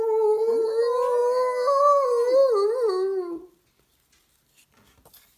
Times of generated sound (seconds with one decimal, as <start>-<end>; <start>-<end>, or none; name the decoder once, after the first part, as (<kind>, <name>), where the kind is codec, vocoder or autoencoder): none